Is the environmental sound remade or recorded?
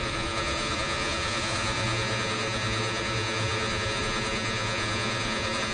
remade